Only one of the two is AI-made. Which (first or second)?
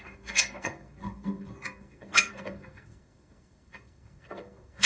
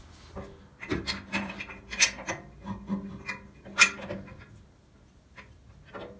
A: first